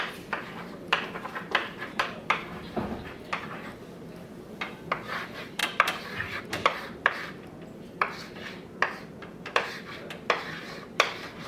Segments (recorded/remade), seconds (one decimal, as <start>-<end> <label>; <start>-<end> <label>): 0.0-5.6 remade; 5.6-6.4 recorded; 6.4-11.5 remade